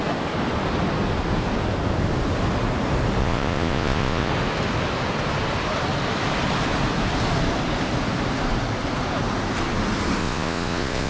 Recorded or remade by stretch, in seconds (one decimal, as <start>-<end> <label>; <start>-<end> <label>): 0.0-3.2 recorded; 3.2-4.3 remade; 4.3-10.2 recorded; 10.2-11.1 remade